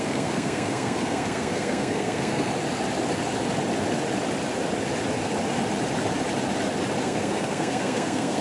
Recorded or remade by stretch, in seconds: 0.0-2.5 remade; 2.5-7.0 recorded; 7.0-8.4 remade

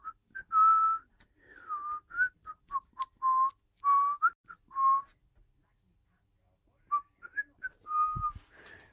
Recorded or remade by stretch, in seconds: 0.0-8.9 recorded